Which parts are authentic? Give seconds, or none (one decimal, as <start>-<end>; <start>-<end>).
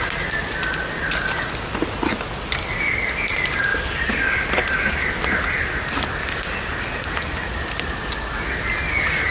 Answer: 0.0-9.3